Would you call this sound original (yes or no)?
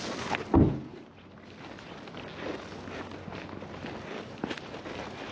yes